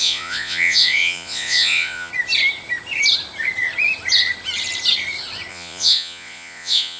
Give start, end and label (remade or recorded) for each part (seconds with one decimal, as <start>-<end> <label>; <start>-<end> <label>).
0.0-2.1 remade; 2.1-5.5 recorded; 5.5-7.0 remade